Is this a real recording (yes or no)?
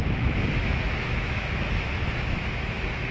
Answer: no